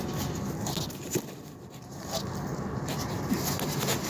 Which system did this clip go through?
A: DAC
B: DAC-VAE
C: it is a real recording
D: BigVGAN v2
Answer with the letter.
C